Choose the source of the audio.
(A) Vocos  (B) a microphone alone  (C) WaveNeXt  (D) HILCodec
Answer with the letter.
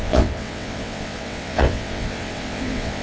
C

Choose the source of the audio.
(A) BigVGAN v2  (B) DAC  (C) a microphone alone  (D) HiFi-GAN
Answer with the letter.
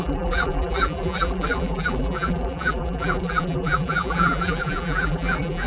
A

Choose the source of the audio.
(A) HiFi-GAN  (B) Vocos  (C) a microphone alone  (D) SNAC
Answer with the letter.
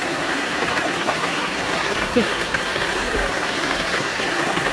D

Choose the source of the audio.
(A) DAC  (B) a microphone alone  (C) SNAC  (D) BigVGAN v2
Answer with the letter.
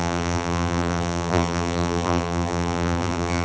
D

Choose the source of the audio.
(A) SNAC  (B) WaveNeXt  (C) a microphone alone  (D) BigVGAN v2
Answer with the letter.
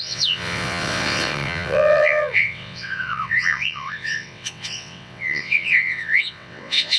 B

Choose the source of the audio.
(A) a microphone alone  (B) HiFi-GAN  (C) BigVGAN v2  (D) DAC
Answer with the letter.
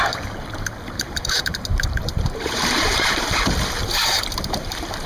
C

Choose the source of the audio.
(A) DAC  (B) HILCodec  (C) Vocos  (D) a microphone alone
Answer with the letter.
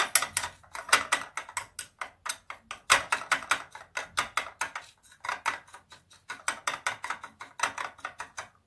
D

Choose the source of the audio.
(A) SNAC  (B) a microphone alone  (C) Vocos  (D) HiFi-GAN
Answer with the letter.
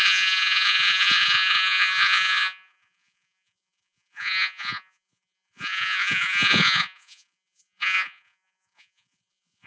C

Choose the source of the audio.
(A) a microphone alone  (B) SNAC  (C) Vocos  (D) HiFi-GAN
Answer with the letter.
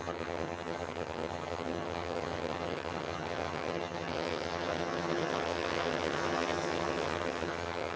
D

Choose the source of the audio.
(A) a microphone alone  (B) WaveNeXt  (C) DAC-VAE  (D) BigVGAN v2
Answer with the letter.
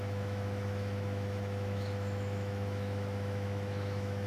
C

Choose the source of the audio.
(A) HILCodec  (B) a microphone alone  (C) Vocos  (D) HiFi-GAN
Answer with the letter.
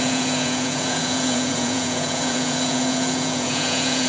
C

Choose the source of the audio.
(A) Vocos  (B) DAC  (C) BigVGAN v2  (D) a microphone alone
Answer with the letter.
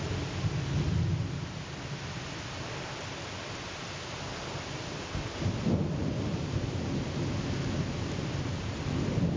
D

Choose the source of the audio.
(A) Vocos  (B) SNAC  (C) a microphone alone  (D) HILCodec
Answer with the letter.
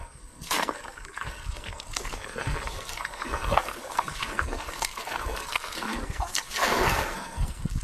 B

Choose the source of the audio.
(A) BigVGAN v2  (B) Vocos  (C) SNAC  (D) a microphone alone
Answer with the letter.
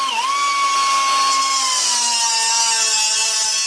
D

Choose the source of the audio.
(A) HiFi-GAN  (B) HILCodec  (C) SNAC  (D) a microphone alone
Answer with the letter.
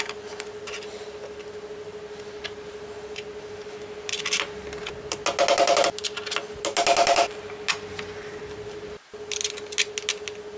D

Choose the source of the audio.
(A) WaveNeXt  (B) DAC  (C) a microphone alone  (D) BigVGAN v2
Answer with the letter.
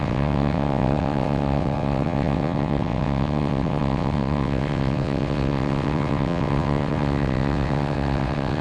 A